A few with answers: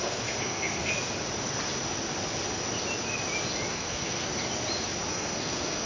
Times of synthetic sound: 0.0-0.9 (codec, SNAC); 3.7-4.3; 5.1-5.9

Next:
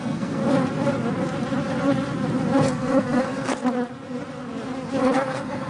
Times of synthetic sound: 0.0-0.4 (codec, SNAC); 2.6-3.6; 5.0-5.7